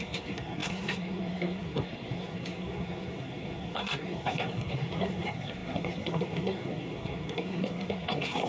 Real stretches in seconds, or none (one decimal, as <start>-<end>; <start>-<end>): none